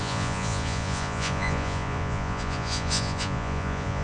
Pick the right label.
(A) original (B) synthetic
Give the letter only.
B